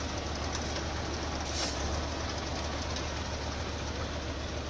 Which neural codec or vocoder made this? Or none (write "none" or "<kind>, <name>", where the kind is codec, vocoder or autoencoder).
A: none